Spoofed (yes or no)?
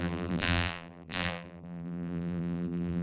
yes